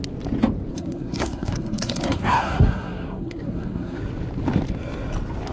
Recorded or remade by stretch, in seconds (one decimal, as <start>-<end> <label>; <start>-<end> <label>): 0.0-0.7 recorded; 0.7-4.0 remade; 4.0-5.5 recorded